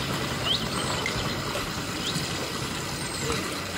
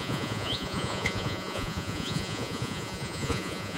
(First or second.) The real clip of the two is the first